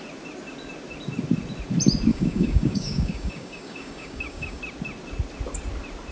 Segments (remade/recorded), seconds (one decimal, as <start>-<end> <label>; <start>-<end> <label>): 0.0-2.1 recorded; 2.1-4.6 remade; 4.6-6.1 recorded